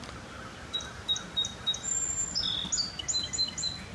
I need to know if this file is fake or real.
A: real